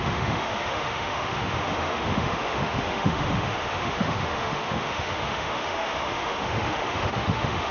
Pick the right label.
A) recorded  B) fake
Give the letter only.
B